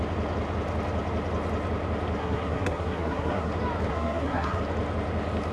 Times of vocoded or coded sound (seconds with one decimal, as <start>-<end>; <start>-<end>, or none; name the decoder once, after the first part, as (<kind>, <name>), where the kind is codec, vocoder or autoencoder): 2.2-3.5 (codec, SNAC); 3.9-4.6